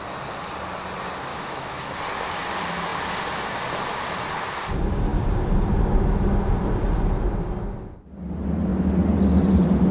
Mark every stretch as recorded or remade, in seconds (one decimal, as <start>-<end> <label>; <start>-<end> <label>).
0.0-1.3 recorded; 1.3-1.9 remade; 1.9-9.9 recorded